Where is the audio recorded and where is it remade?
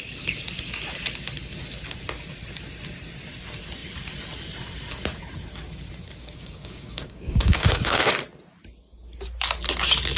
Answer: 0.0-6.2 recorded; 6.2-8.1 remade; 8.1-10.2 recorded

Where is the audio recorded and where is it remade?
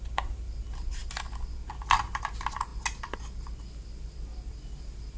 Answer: 0.0-5.2 recorded